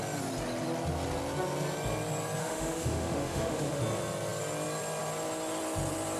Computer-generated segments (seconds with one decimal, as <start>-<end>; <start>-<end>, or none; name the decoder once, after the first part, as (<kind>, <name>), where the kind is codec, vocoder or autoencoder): 2.4-3.8 (autoencoder, DAC-VAE)